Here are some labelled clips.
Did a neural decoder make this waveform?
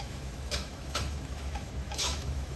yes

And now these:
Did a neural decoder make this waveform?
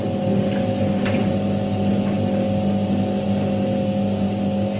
no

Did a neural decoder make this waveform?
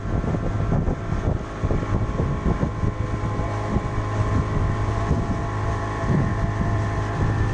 no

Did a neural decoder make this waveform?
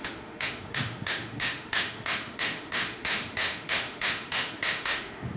yes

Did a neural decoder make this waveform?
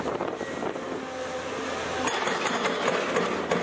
no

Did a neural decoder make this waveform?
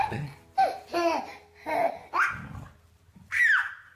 no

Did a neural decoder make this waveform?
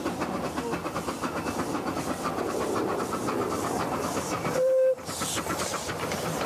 no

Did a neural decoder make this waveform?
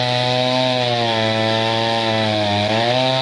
yes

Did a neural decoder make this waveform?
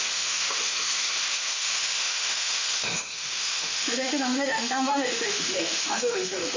yes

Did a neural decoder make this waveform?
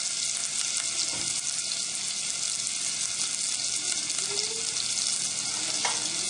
no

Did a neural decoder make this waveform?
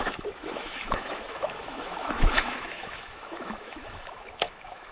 yes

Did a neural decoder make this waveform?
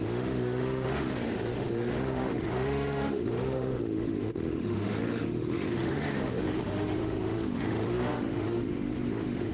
yes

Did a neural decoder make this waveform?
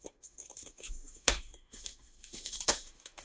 yes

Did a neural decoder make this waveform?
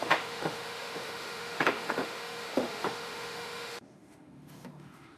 yes